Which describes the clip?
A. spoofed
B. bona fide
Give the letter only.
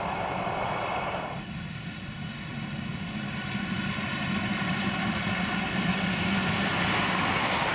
B